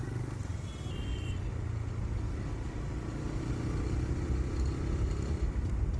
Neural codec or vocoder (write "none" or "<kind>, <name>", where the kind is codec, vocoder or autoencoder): none